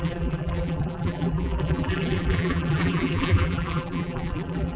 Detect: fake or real fake